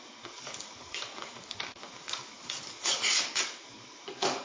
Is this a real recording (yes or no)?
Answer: no